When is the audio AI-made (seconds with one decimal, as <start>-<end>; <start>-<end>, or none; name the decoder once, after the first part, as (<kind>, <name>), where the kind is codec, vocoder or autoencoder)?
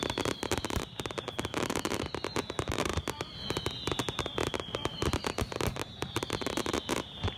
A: 0.0-2.9 (vocoder, BigVGAN v2); 3.7-7.4